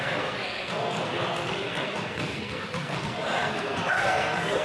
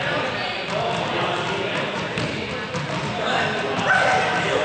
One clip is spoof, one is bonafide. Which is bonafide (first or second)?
second